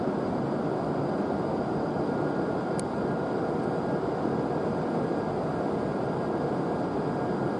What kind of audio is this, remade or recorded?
remade